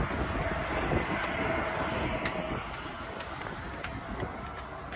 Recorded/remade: recorded